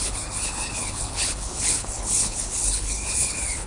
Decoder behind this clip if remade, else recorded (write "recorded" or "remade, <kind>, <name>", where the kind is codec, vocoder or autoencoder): remade, codec, HILCodec